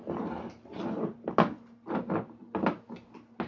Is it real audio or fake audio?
real